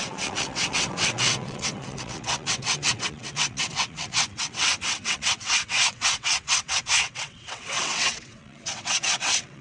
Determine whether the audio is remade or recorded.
remade